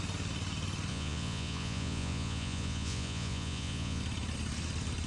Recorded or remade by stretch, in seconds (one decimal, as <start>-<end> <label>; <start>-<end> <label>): 0.0-0.9 recorded; 0.9-4.0 remade; 4.0-5.1 recorded